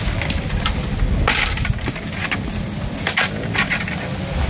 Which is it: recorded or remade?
recorded